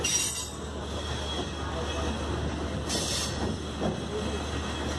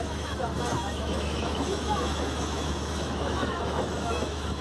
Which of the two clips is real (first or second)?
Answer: first